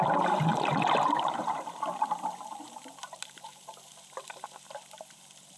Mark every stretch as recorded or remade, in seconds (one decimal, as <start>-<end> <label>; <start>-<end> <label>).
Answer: 0.0-0.5 recorded; 0.5-3.9 remade; 3.9-5.6 recorded